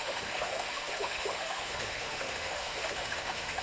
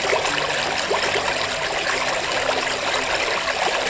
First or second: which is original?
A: second